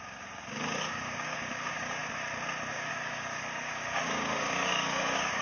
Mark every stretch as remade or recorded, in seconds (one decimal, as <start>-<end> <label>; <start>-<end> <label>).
0.0-2.0 remade; 2.0-2.7 recorded; 2.7-5.4 remade